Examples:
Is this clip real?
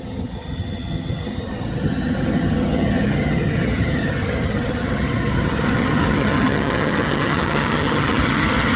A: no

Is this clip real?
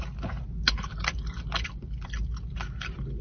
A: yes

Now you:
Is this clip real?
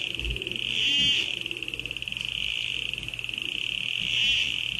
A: yes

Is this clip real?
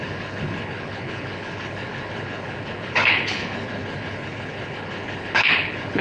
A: no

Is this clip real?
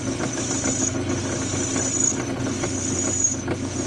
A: yes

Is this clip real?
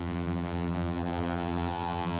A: no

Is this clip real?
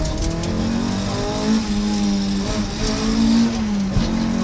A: yes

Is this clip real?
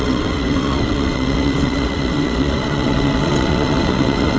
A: no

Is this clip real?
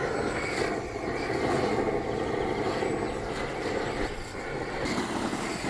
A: yes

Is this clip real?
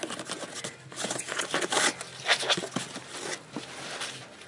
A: yes